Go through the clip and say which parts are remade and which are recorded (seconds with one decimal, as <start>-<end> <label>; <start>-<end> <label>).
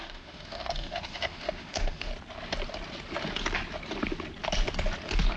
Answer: 0.0-2.1 remade; 2.1-5.4 recorded